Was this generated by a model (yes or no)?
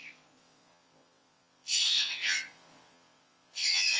yes